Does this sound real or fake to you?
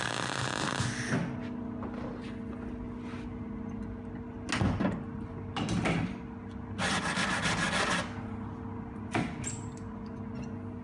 real